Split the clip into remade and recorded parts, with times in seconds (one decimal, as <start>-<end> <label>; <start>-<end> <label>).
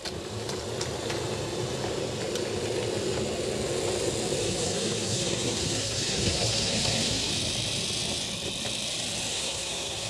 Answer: 0.0-4.4 recorded; 4.4-7.3 remade; 7.3-9.3 recorded; 9.3-10.1 remade